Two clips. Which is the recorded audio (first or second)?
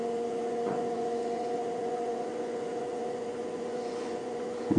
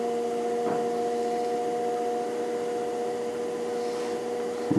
second